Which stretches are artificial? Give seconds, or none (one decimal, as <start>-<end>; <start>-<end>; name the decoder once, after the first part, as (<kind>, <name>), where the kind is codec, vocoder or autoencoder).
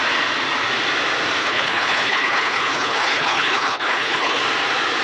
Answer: 1.4-4.4 (codec, HILCodec)